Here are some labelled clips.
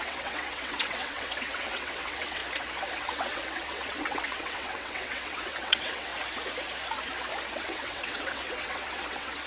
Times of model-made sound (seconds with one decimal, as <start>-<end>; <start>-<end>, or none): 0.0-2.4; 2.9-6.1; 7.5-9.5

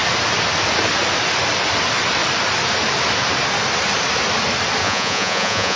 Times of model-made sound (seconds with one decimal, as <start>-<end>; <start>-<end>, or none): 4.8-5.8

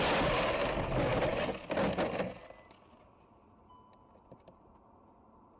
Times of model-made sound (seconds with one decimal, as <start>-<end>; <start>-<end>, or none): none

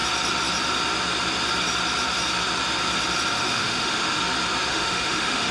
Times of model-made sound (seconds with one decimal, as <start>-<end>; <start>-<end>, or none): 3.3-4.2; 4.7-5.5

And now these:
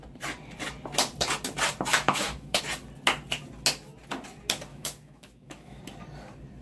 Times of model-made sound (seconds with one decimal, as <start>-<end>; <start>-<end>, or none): 1.9-2.6; 4.7-5.8